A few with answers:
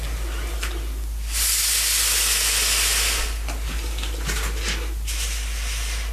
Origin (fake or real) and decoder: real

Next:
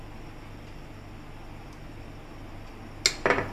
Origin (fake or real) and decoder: real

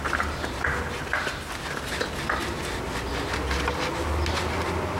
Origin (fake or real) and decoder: real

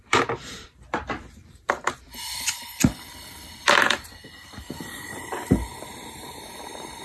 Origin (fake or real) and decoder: fake, vocoder, BigVGAN v2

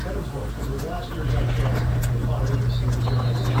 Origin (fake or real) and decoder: real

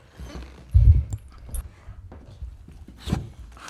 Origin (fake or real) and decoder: real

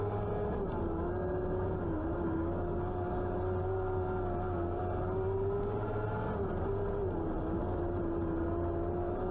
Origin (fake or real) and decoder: real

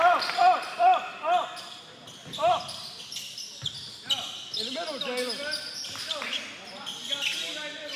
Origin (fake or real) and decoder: real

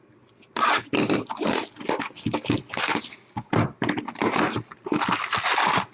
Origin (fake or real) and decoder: real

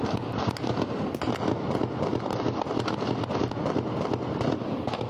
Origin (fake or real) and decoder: real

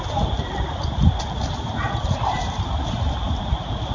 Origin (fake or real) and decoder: real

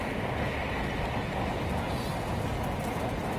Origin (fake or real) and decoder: real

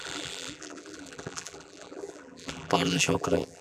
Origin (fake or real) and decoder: fake, vocoder, BigVGAN v2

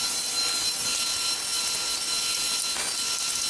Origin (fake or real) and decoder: fake, vocoder, BigVGAN v2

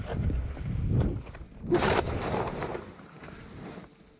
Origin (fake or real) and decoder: fake, vocoder, BigVGAN v2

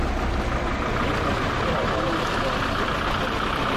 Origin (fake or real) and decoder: real